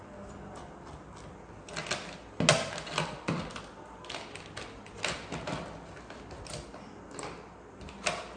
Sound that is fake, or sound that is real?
real